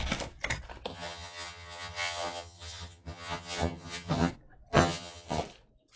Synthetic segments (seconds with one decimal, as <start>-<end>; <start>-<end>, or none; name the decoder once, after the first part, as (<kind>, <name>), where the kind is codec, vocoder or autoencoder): 0.9-4.3 (vocoder, HiFi-GAN); 4.7-5.4